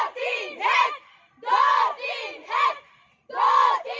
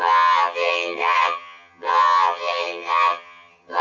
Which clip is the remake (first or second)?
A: second